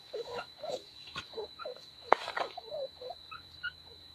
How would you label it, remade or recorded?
remade